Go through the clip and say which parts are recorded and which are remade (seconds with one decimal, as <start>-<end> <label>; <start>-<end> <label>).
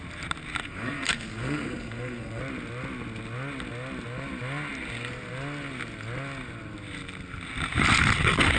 0.0-0.6 recorded; 0.6-2.4 remade; 2.4-8.6 recorded